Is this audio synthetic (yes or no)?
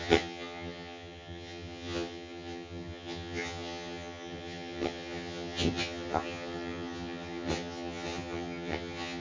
yes